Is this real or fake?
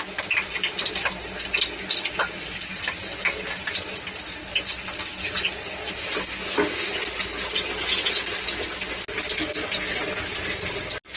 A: real